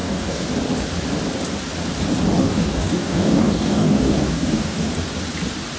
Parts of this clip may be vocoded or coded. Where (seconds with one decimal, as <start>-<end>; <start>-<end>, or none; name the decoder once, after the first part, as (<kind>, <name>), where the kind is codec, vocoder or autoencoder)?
0.0-0.5 (codec, DAC); 2.4-4.9